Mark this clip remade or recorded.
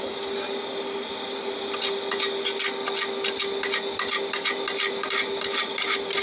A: recorded